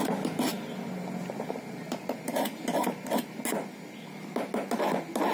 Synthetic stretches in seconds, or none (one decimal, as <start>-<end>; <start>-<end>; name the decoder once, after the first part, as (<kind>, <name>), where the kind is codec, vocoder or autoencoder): none